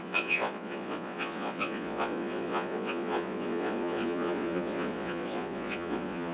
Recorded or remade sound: remade